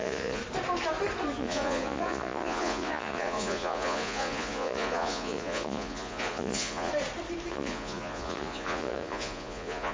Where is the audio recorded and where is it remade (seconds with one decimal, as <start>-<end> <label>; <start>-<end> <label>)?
0.0-0.4 remade; 0.4-1.4 recorded; 1.4-6.9 remade; 6.9-7.5 recorded; 7.5-9.9 remade